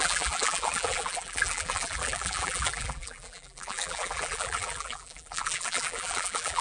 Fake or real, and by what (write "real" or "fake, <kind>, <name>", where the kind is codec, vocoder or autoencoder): fake, vocoder, BigVGAN v2